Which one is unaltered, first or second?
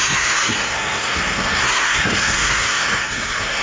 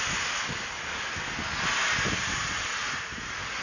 second